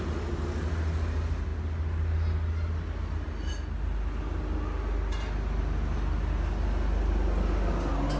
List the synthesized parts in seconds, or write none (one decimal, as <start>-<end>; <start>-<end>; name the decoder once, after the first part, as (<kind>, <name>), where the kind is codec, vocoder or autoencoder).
none